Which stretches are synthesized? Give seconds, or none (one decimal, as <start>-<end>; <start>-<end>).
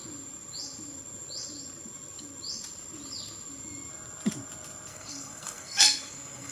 4.9-6.5